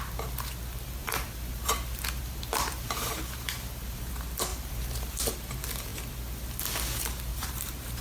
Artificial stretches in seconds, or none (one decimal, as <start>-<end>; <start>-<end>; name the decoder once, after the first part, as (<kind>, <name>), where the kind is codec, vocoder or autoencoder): 1.0-4.1 (vocoder, BigVGAN v2); 4.5-5.2; 7.3-8.0